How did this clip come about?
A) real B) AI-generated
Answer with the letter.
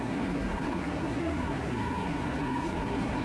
B